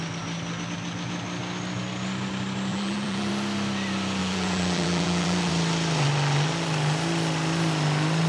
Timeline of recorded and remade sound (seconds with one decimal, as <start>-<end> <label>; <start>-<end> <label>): 0.0-2.7 recorded; 2.7-3.3 remade; 3.3-4.2 recorded; 4.2-5.5 remade; 5.5-8.3 recorded